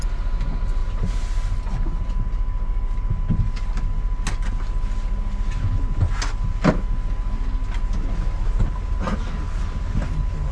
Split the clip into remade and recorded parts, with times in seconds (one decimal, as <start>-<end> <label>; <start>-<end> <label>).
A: 0.0-10.5 recorded